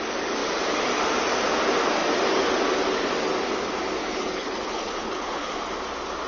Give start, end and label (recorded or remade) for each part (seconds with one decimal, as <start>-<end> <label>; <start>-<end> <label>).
0.0-4.0 recorded; 4.0-5.6 remade; 5.6-6.3 recorded